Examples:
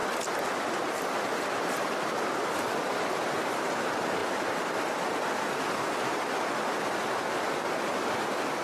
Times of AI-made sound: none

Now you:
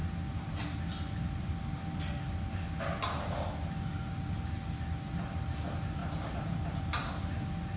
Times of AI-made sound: none

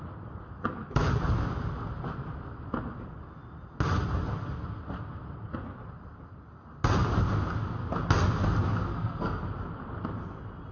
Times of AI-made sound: 8.9-9.5 (codec, SNAC)

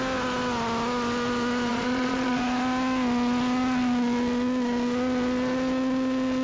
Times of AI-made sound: 1.7-2.4 (vocoder, Vocos)

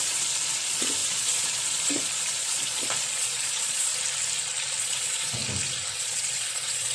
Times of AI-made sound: 0.0-3.9 (vocoder, Vocos); 4.8-5.4; 5.9-6.9

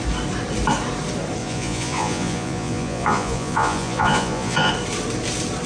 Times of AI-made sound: 1.4-4.7 (vocoder, Vocos)

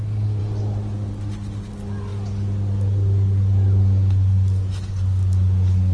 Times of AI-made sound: none